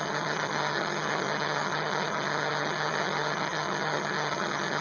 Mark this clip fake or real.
fake